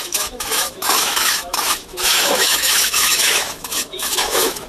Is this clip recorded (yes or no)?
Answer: no